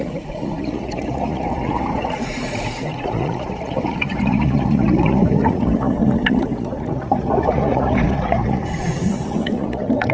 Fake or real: fake